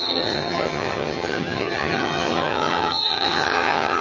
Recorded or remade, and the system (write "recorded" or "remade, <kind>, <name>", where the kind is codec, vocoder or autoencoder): remade, vocoder, HiFi-GAN